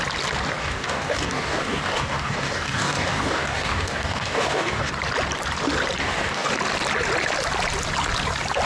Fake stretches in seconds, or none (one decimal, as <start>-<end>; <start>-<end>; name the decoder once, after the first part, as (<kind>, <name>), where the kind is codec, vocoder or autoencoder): 0.6-4.9 (codec, DAC); 6.0-6.5